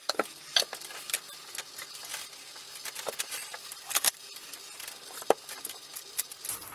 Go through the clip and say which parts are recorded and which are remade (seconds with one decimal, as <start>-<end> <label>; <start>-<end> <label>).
0.0-2.1 remade; 2.1-2.7 recorded; 2.7-5.9 remade; 5.9-6.7 recorded